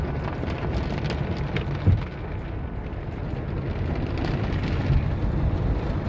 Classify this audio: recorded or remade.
recorded